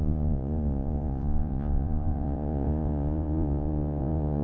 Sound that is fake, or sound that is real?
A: fake